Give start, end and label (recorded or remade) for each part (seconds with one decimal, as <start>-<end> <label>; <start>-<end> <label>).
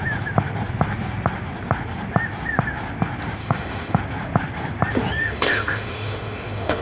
0.0-3.4 recorded; 3.4-4.0 remade; 4.0-5.2 recorded; 5.2-6.8 remade